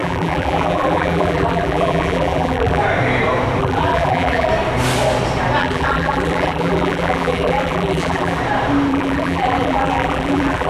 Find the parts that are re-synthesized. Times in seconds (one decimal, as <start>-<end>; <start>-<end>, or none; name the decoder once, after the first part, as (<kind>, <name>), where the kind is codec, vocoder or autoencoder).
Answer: 0.0-2.8 (vocoder, BigVGAN v2); 3.6-4.5; 5.6-8.4; 8.9-10.7